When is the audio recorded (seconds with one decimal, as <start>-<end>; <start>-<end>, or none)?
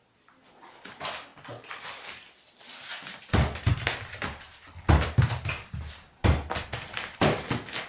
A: 0.0-7.9